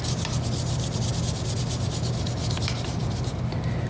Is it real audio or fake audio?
real